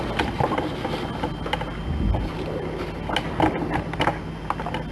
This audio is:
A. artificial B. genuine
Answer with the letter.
B